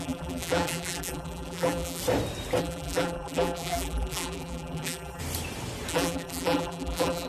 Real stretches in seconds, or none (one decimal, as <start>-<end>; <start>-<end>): 2.0-2.6; 5.2-5.9

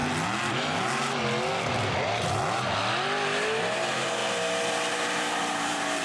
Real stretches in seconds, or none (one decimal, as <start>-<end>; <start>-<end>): 0.0-3.6; 4.2-4.9

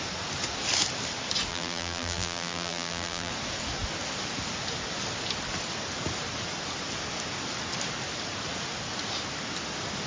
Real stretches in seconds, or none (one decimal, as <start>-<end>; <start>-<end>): 0.0-1.5; 3.3-10.1

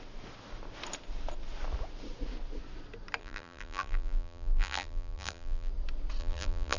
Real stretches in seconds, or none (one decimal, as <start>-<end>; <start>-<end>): 0.0-3.2; 5.7-6.2

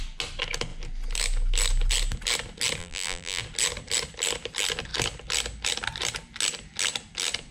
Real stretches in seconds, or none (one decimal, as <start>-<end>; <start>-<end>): 0.0-2.8; 3.4-7.5

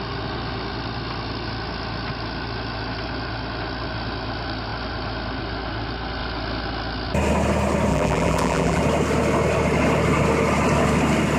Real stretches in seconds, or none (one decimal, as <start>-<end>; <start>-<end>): 0.0-7.9; 8.8-11.4